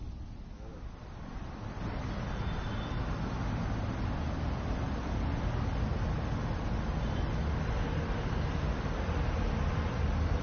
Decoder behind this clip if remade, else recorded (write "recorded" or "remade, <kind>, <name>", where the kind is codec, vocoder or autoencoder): recorded